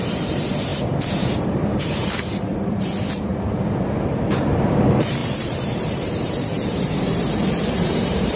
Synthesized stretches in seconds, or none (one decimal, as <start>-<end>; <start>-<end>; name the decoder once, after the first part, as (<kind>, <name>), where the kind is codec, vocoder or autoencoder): 0.0-3.3 (vocoder, BigVGAN v2); 4.3-8.4